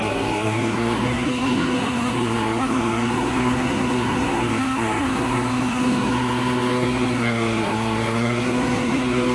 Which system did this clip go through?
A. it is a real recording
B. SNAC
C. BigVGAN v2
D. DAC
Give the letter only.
B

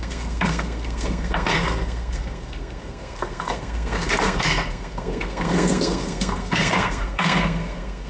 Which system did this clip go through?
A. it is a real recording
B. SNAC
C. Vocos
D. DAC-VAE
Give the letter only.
B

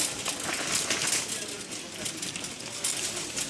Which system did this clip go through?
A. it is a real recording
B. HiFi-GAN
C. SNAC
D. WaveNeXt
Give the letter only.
A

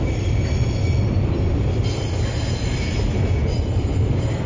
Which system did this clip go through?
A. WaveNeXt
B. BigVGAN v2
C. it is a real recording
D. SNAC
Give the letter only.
C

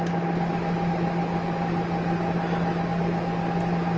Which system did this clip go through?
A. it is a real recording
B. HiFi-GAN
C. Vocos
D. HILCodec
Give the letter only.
A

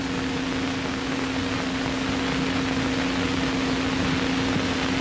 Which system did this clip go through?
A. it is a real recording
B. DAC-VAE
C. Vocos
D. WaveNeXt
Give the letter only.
A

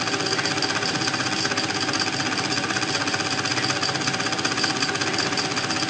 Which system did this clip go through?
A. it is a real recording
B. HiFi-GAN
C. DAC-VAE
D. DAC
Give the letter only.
A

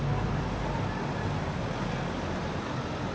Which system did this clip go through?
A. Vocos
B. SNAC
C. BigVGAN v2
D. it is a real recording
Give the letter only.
D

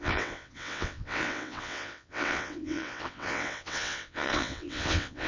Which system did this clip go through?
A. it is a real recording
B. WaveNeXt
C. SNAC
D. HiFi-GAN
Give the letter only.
B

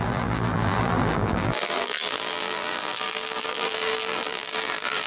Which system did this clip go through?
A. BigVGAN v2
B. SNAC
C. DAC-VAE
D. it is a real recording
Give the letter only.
A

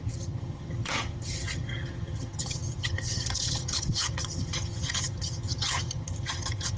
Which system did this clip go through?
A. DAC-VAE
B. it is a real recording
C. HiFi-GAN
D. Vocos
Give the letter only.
C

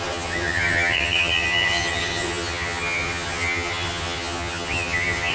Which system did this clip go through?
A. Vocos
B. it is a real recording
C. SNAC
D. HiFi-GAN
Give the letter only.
D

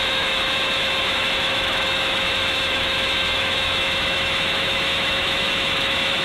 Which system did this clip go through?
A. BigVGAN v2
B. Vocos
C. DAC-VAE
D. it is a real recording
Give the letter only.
C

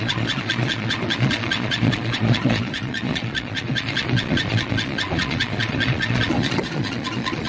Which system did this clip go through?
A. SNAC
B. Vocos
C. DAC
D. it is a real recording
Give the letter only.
B